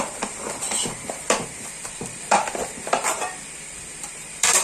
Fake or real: fake